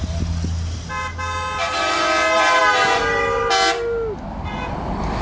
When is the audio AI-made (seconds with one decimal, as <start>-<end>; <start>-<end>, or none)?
none